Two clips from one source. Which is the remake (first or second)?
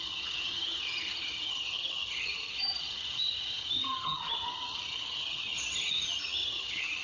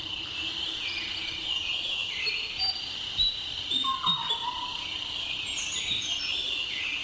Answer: first